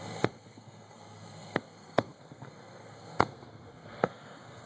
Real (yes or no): no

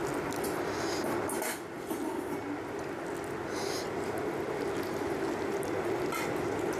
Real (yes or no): yes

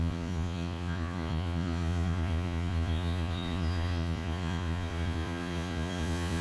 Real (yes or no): no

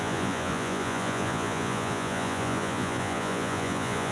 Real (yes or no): no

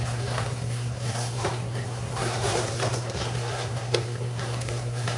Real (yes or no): no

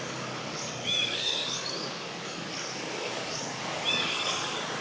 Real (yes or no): no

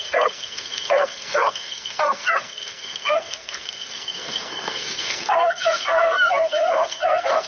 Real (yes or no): no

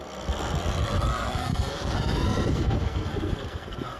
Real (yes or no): no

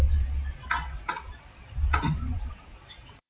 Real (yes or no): no